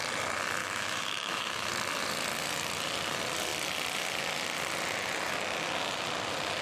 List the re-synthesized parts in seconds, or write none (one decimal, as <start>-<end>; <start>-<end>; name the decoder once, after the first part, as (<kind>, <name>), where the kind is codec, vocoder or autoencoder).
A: 0.6-1.7 (autoencoder, DAC-VAE)